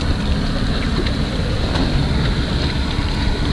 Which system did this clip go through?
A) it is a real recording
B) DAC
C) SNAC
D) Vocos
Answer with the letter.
A